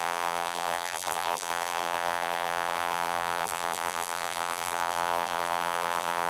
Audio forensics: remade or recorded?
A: remade